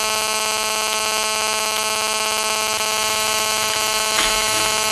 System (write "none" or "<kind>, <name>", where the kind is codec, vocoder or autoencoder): autoencoder, DAC-VAE